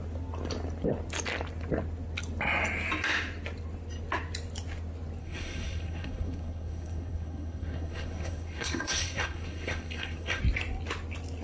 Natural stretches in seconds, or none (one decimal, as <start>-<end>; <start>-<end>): 0.0-5.2; 10.4-11.4